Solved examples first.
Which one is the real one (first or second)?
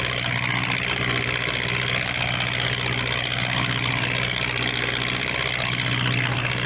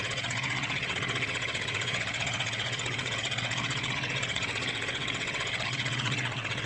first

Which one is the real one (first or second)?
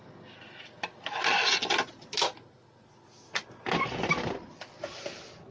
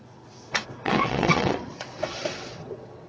first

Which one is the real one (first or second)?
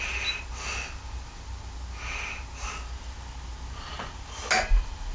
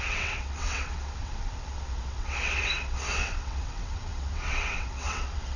first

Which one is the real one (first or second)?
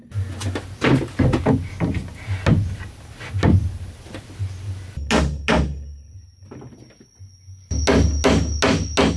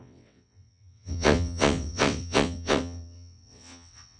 first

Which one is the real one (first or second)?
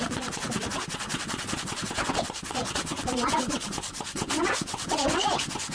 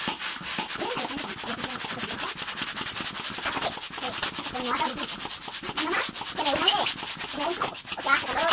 second